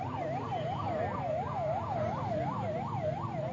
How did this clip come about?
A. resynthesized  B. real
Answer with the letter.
B